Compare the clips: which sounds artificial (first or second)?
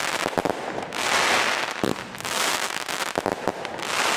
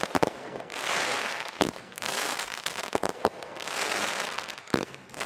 second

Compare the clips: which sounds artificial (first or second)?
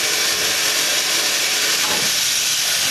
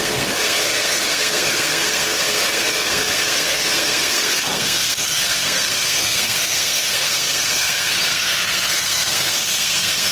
second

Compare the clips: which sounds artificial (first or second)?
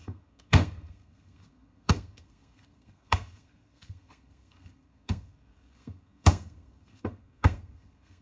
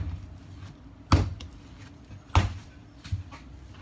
first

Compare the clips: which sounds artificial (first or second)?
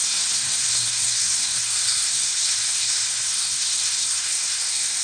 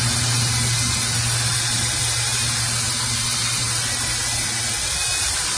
first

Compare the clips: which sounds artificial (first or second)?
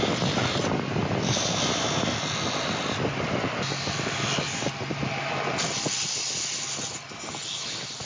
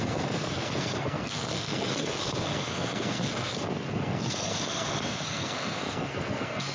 second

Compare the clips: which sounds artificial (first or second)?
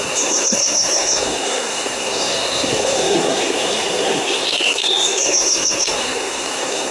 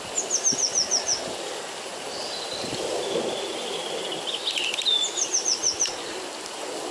first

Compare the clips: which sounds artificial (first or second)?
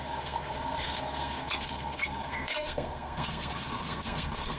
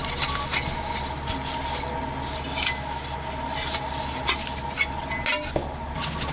first